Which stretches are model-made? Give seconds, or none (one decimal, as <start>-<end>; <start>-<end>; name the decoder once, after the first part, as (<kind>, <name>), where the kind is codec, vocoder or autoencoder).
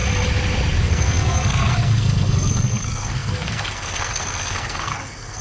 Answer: 0.8-5.4 (codec, SNAC)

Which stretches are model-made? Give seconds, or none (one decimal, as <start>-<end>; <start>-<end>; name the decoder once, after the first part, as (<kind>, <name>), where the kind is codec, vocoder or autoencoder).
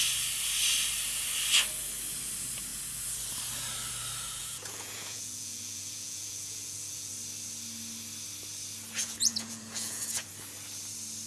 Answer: 4.4-7.1 (vocoder, Vocos); 9.0-10.3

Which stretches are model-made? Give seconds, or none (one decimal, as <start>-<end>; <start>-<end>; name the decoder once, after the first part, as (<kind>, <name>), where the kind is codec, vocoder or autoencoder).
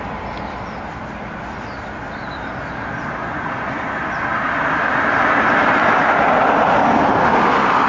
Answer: 3.2-4.0 (vocoder, Vocos)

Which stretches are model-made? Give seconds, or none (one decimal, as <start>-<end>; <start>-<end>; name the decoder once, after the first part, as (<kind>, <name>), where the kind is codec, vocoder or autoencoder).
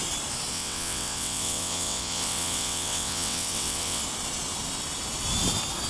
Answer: 0.5-4.0 (vocoder, WaveNeXt)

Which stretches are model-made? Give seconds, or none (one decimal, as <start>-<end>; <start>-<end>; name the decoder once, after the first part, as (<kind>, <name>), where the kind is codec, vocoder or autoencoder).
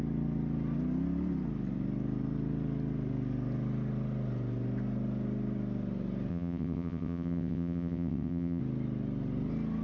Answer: 6.3-8.6 (vocoder, WaveNeXt)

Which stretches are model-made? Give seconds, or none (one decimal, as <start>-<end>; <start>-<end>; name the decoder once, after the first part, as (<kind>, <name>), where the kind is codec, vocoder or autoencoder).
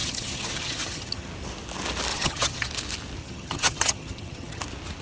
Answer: 0.0-1.3 (vocoder, HiFi-GAN); 2.1-2.7; 3.2-4.6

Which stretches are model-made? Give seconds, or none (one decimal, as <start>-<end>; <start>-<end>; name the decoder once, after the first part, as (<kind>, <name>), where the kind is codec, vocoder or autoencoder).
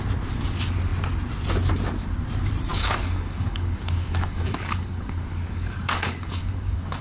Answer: 2.7-7.0 (codec, DAC)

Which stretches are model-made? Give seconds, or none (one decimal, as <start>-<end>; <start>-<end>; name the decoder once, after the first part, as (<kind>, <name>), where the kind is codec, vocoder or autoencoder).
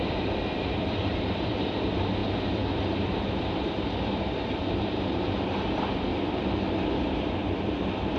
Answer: 0.0-8.2 (vocoder, BigVGAN v2)